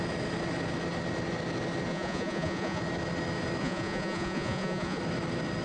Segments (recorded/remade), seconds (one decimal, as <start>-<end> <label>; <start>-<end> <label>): 0.0-1.9 recorded; 1.9-2.8 remade; 2.8-3.6 recorded; 3.6-5.0 remade; 5.0-5.6 recorded